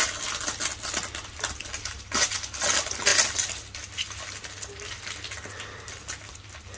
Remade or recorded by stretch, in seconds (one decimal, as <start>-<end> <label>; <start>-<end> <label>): 0.0-6.8 recorded